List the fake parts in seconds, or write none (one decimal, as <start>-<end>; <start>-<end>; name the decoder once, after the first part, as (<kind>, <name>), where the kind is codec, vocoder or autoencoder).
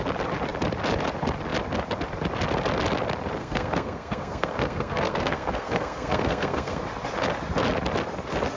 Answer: 3.4-6.8 (codec, SNAC)